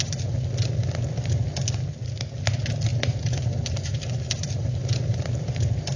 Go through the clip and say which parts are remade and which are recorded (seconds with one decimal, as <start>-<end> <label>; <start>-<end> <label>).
0.0-2.9 recorded; 2.9-6.0 remade